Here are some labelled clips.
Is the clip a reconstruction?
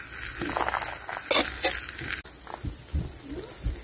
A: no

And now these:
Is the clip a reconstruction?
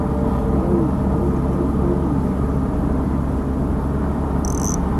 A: no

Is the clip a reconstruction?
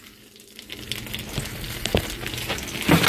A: no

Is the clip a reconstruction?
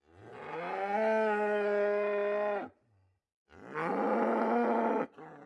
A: no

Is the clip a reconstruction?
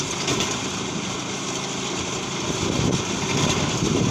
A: yes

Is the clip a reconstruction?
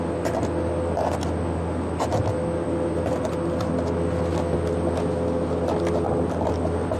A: no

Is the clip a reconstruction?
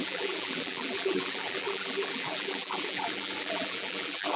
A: yes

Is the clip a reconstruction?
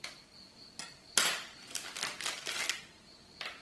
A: no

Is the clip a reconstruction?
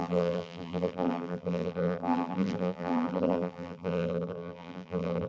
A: yes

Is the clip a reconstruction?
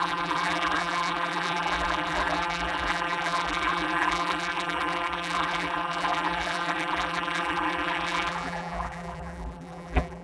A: yes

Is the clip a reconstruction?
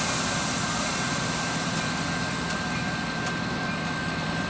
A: yes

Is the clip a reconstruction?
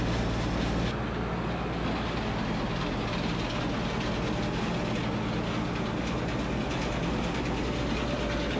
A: no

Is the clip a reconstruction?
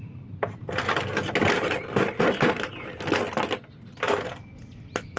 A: no